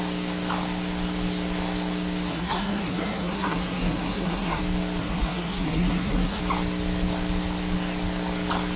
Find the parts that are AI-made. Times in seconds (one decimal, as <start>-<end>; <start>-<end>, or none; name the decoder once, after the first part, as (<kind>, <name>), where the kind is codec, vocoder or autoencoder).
2.3-4.6 (codec, SNAC); 5.0-6.4